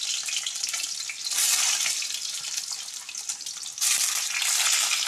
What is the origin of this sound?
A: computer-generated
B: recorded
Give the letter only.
B